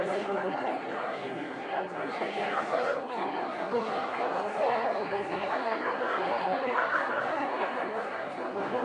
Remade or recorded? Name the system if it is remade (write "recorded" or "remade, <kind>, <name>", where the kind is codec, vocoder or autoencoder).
remade, codec, SNAC